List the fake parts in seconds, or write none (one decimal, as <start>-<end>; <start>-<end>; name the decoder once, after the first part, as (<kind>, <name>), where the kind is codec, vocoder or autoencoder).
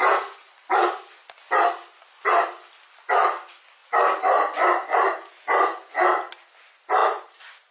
none